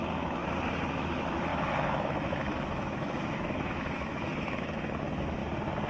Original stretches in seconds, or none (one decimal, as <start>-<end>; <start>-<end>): 0.4-1.0; 5.4-5.9